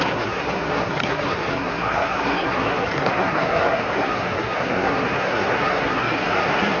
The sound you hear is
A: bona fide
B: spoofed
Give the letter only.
B